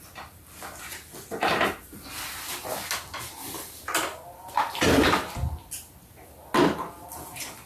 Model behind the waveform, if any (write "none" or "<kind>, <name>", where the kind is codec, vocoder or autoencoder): none